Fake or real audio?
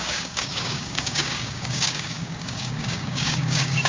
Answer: fake